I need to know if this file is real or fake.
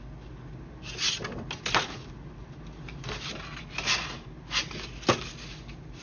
real